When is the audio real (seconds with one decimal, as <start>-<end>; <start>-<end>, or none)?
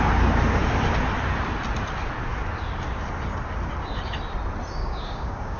0.0-4.8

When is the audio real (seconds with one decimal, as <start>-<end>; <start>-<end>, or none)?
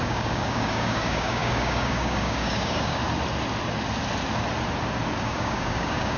3.0-5.2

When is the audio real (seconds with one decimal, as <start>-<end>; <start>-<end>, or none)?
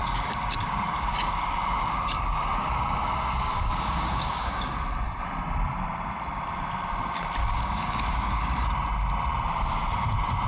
4.8-7.4; 8.7-10.5